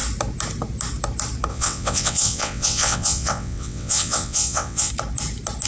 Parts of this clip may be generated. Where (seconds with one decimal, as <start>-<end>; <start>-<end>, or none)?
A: 1.5-4.9